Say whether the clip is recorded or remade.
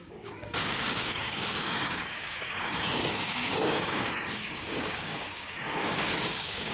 remade